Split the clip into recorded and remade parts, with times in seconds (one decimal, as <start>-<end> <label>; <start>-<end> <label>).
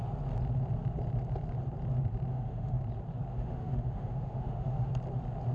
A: 0.0-2.3 recorded; 2.3-2.8 remade; 2.8-3.3 recorded; 3.3-4.9 remade; 4.9-5.5 recorded